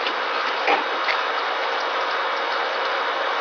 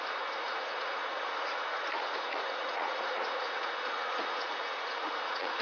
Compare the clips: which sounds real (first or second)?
first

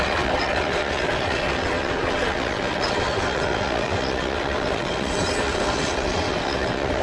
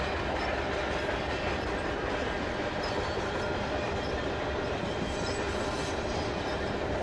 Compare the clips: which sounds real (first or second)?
second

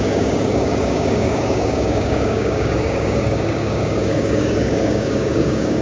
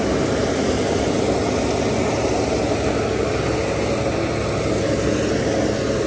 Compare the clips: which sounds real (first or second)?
second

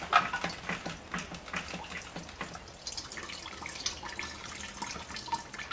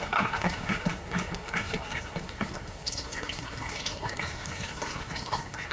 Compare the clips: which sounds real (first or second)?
first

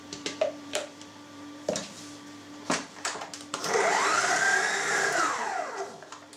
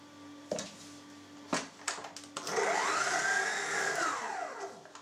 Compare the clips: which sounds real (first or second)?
second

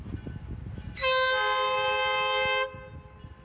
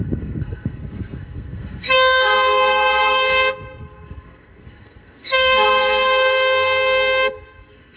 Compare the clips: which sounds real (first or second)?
first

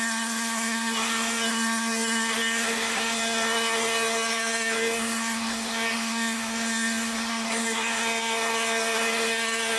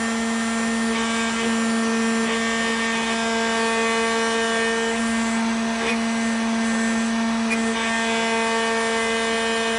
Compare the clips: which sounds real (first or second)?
second